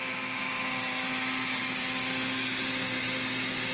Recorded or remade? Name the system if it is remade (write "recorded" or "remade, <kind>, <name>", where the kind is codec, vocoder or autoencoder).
recorded